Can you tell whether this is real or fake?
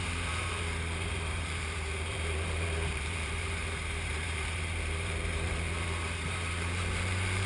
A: fake